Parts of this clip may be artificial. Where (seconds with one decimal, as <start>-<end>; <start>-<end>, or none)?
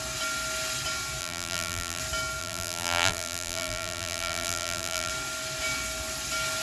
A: 1.2-2.0; 2.4-5.1